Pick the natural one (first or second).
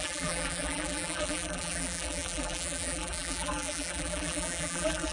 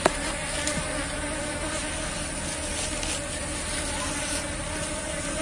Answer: second